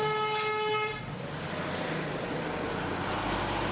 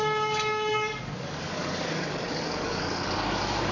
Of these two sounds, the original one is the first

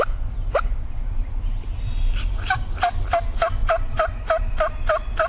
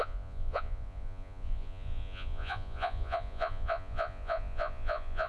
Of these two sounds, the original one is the first